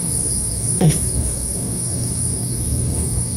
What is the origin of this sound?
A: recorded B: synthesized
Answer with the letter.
B